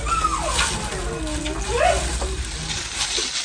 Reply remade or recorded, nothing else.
recorded